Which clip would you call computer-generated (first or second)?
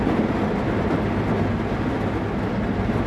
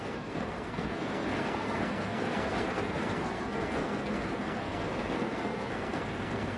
second